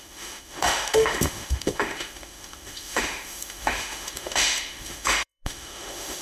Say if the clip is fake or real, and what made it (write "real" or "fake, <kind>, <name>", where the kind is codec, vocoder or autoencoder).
fake, autoencoder, DAC-VAE